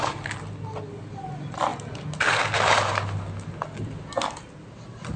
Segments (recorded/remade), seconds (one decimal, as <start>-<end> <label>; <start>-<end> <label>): 0.0-5.2 recorded